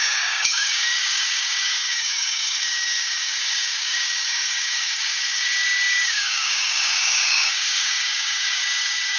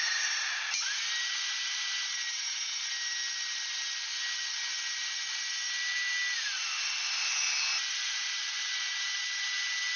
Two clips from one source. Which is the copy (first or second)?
first